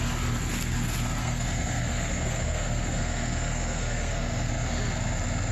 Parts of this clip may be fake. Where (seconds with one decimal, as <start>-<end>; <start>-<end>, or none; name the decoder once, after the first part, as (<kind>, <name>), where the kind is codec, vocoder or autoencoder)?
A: 1.2-4.5 (codec, SNAC)